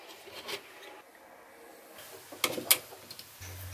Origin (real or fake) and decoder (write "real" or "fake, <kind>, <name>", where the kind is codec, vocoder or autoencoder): real